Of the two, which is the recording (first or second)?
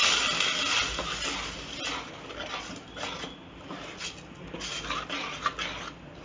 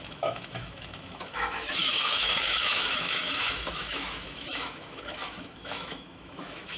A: first